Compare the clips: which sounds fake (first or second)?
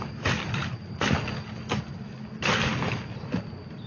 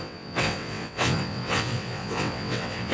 second